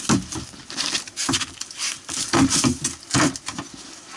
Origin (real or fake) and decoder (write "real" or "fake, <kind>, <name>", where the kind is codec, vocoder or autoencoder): real